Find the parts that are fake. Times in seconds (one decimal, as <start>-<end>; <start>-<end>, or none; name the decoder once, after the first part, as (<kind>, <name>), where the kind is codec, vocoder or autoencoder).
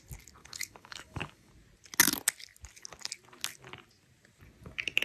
0.4-1.5 (codec, DAC)